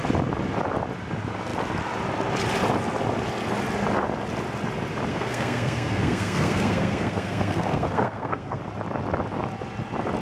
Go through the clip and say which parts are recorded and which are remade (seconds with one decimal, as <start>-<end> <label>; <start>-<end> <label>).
0.0-5.1 recorded; 5.1-8.6 remade; 8.6-10.2 recorded